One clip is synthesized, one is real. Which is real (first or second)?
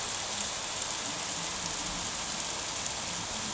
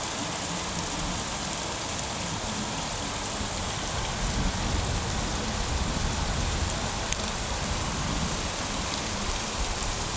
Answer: first